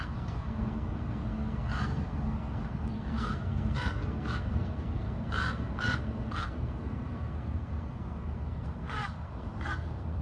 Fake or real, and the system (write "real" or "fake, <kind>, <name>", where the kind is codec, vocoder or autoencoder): fake, codec, SNAC